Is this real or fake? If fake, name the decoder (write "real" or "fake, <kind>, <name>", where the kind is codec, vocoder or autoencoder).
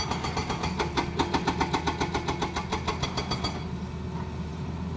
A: real